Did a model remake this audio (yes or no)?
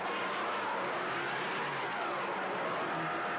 no